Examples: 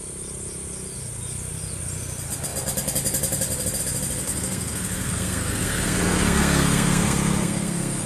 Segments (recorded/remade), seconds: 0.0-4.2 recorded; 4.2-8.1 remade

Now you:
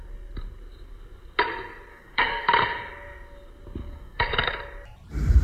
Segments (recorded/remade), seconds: 0.0-1.9 recorded; 1.9-2.5 remade; 2.5-3.8 recorded; 3.8-4.6 remade; 4.6-5.4 recorded